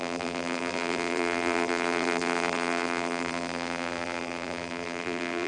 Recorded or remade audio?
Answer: remade